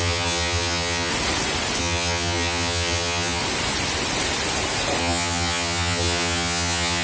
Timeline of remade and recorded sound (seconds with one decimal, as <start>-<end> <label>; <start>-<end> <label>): 0.0-1.1 remade; 1.1-1.8 recorded; 1.8-3.4 remade; 3.4-5.0 recorded; 5.0-7.0 remade